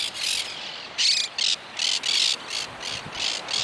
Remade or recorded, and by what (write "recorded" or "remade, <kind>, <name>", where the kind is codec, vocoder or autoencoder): recorded